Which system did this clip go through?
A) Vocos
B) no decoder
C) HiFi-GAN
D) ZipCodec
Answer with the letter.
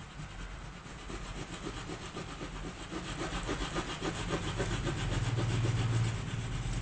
B